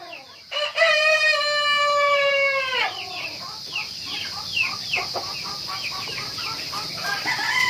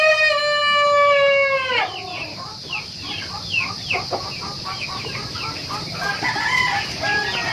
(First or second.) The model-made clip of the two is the first